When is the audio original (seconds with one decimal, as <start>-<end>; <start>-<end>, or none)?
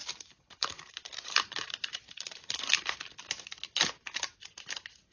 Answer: 2.6-5.1